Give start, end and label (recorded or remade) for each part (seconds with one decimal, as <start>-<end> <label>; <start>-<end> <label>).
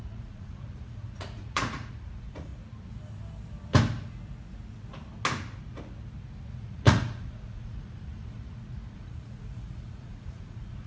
0.0-2.5 remade; 2.5-6.5 recorded; 6.5-10.9 remade